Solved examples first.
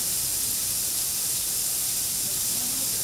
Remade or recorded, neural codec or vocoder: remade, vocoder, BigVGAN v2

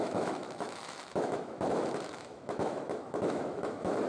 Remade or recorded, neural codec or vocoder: remade, autoencoder, DAC-VAE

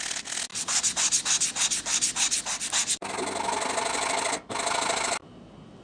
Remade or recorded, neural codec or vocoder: recorded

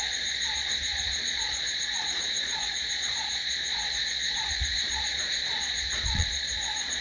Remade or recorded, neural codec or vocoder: remade, vocoder, Vocos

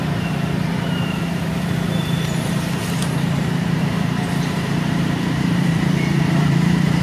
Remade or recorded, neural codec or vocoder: remade, vocoder, BigVGAN v2